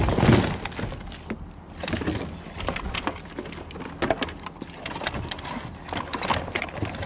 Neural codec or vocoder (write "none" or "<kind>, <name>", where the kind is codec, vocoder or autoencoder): none